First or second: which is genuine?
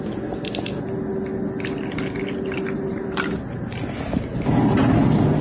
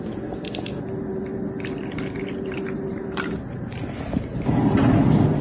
first